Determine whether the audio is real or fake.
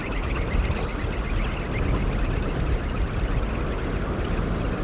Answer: real